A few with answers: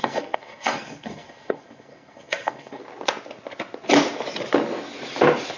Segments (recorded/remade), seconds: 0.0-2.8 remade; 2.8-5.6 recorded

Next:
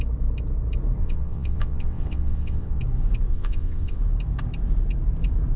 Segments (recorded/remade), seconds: 0.0-1.0 recorded; 1.0-2.8 remade; 2.8-3.3 recorded; 3.3-4.0 remade; 4.0-5.6 recorded

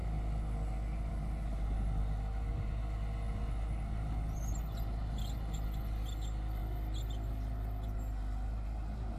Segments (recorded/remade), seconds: 0.0-9.2 recorded

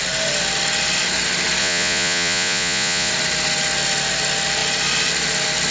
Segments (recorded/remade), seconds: 0.0-1.6 recorded; 1.6-3.1 remade; 3.1-5.7 recorded

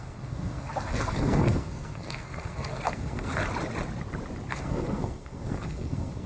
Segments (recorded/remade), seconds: 0.0-3.4 remade; 3.4-4.5 recorded; 4.5-6.3 remade

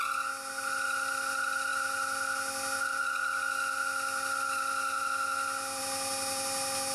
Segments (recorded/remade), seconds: 0.0-6.9 recorded

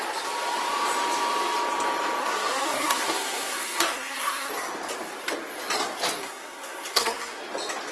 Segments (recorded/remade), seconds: 0.0-2.2 recorded; 2.2-4.5 remade; 4.5-6.2 recorded; 6.2-7.4 remade; 7.4-7.9 recorded

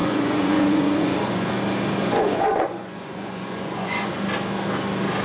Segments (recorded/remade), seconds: 0.0-1.5 remade; 1.5-2.0 recorded; 2.0-4.1 remade; 4.1-5.2 recorded